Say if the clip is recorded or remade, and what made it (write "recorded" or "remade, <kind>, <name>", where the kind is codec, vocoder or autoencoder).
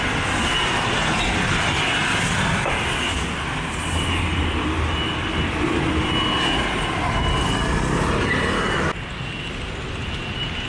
recorded